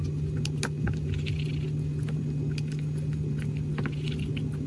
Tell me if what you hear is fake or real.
real